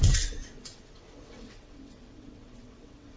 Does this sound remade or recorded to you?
remade